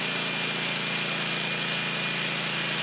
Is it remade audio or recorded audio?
recorded